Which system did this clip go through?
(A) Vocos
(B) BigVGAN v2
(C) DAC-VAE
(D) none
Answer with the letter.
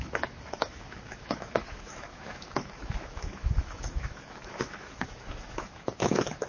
C